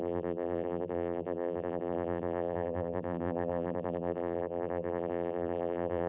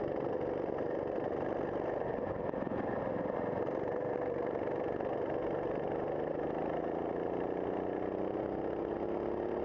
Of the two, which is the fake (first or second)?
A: first